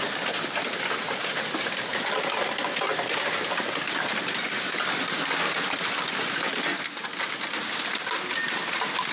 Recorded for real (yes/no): yes